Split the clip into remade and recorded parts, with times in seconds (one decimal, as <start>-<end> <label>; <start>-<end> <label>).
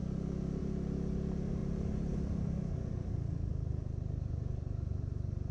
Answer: 0.0-5.5 recorded